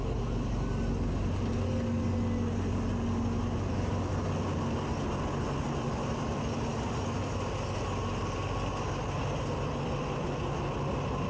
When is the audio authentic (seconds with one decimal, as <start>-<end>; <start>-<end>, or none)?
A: 0.0-11.3